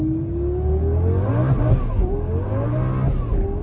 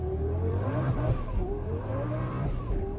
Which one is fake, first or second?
second